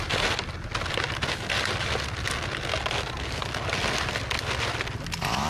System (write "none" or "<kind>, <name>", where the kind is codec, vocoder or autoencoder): none